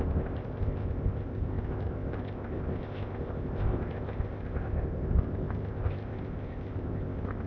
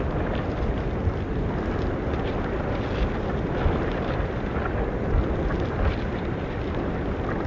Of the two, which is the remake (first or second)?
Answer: first